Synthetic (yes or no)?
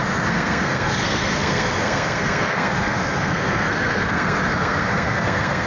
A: yes